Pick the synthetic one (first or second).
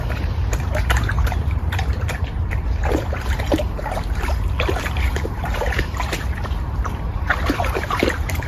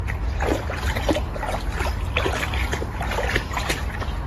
first